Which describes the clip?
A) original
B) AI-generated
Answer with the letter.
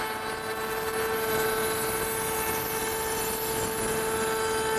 A